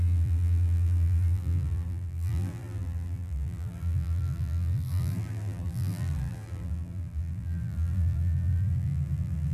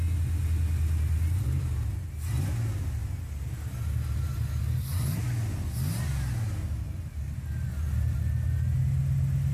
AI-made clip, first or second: first